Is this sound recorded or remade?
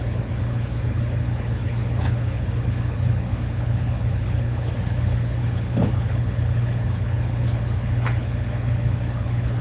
remade